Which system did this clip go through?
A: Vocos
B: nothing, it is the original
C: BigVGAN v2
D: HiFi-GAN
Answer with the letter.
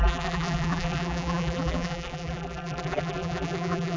C